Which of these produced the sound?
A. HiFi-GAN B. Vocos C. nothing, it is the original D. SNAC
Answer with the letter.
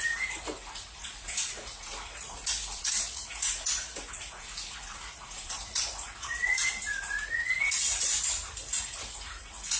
B